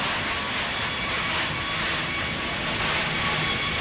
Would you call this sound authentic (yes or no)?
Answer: yes